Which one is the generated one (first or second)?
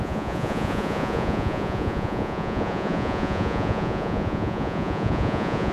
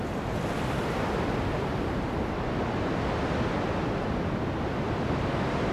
first